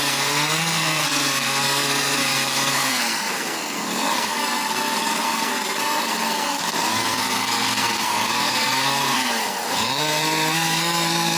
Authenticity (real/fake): fake